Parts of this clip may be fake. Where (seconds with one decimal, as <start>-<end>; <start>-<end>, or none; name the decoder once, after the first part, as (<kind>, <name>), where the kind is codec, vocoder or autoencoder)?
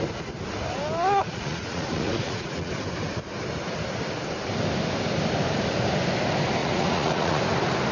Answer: 1.2-2.7 (vocoder, Vocos); 6.6-7.4